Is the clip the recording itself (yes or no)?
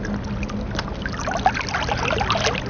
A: yes